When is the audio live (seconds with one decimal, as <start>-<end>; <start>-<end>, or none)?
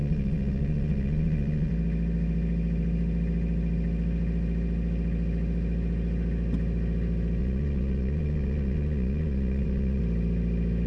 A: 1.7-7.4; 10.0-10.9